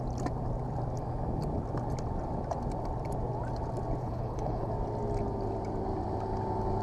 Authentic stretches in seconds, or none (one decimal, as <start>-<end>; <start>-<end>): 0.0-4.0; 4.7-6.8